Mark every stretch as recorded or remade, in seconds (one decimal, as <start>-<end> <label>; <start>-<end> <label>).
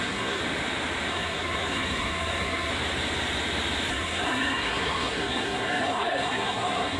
0.0-0.4 remade; 0.4-1.1 recorded; 1.1-2.7 remade; 2.7-3.9 recorded; 3.9-7.0 remade